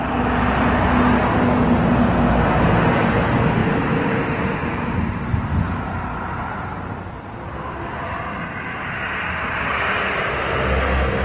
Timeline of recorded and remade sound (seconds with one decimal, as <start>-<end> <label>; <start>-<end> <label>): 0.0-3.6 recorded; 3.6-7.1 remade; 7.1-11.2 recorded